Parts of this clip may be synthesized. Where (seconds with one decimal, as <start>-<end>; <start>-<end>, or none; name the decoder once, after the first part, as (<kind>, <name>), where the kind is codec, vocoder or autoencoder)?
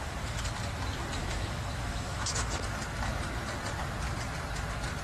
1.2-2.6 (autoencoder, DAC-VAE)